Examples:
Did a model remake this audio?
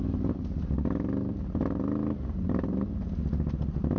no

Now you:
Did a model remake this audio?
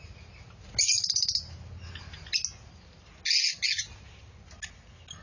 no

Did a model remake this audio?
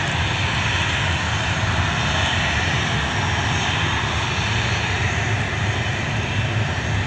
no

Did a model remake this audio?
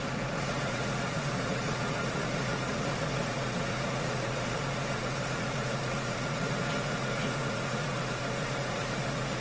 yes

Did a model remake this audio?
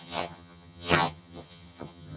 yes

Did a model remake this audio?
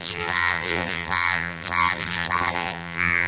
yes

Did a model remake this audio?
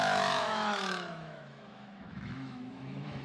yes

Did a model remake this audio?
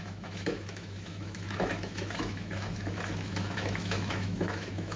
yes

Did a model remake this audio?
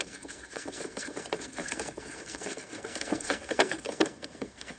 yes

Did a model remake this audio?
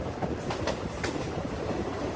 yes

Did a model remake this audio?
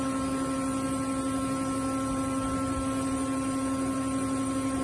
no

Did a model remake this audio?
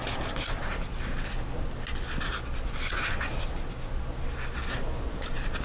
no